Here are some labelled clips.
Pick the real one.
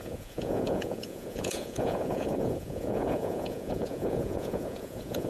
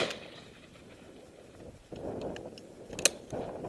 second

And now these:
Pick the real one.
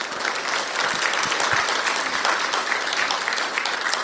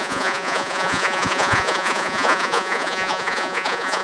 first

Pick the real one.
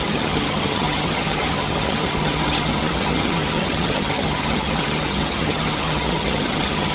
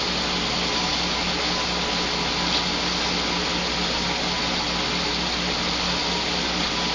second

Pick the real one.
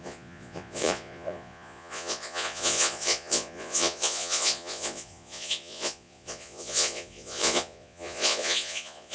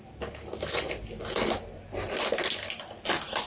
second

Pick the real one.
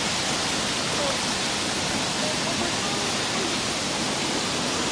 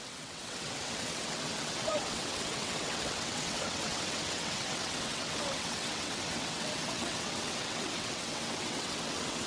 first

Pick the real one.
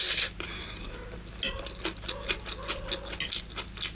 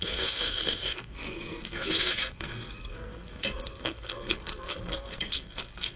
first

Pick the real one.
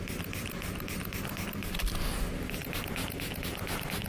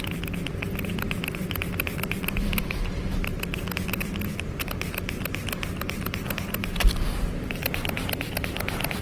first